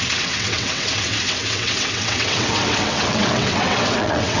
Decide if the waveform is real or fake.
fake